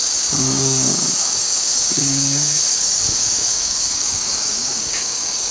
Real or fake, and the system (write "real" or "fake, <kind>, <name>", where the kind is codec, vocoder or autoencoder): fake, codec, DAC